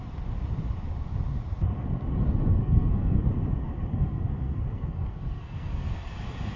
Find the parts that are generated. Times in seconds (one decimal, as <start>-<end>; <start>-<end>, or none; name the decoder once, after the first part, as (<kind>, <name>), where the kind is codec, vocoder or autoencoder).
2.4-3.2 (codec, SNAC); 3.9-6.0